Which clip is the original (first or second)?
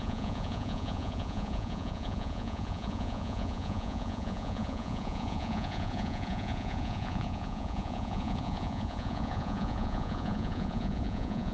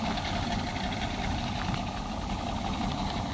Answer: second